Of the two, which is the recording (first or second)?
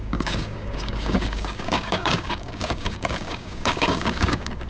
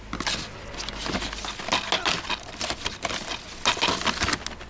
second